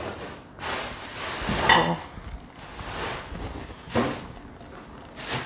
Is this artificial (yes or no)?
no